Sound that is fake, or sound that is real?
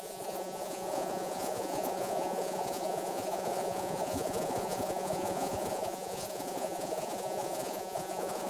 fake